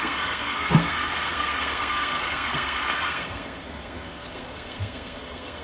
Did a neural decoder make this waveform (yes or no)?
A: yes